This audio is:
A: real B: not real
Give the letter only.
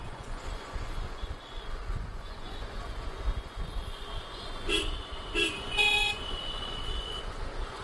B